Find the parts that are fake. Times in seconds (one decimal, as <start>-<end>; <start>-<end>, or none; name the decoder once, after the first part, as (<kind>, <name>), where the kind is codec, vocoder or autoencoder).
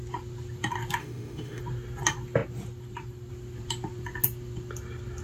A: 1.0-1.6 (autoencoder, DAC-VAE)